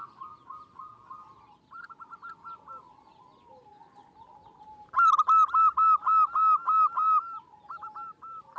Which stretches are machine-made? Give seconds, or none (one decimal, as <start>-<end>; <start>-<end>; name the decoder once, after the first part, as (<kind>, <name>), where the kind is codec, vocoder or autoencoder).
none